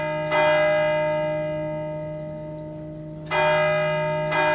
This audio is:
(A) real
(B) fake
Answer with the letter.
A